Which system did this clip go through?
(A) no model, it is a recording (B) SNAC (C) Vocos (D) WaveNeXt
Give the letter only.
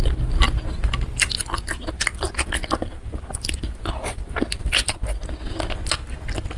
A